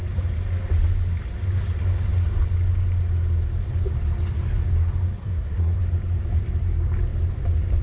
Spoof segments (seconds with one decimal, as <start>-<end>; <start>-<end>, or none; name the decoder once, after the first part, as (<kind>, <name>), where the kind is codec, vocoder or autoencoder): 5.2-5.8 (codec, SNAC)